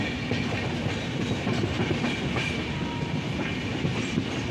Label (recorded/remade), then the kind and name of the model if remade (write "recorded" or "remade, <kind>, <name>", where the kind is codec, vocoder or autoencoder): recorded